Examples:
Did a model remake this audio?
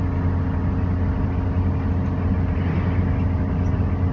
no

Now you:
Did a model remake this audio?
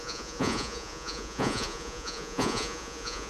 yes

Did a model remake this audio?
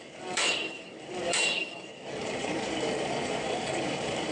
yes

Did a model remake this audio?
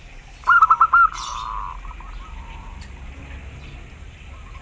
no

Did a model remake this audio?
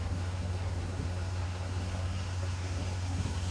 yes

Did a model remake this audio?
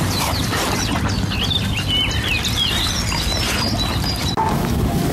no